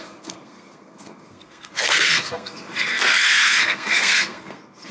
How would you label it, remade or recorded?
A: remade